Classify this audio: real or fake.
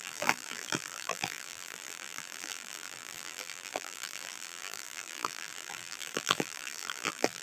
fake